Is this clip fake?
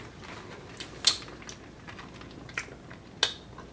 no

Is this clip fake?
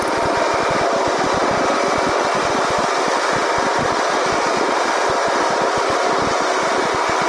no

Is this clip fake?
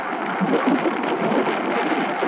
no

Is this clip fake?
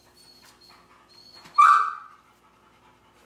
no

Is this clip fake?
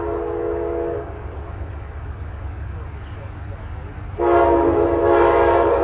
yes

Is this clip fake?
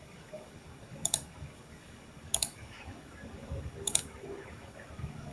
yes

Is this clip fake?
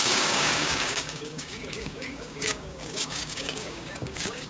yes